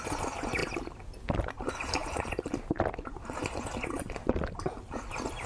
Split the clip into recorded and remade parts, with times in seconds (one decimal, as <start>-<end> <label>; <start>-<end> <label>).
0.0-5.5 recorded